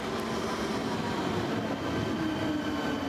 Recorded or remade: recorded